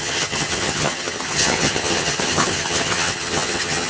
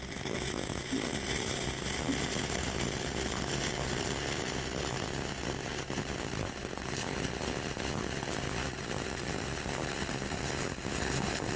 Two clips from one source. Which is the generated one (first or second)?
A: first